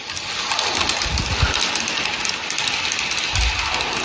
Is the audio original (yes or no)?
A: yes